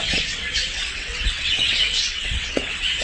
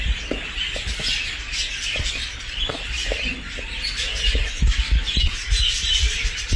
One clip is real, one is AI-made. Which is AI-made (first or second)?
first